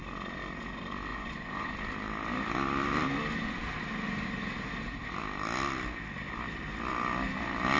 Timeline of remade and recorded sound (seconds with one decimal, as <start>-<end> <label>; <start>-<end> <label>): 0.0-1.1 recorded; 1.1-1.7 remade; 1.7-7.8 recorded